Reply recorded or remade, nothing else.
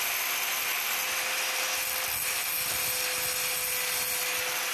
recorded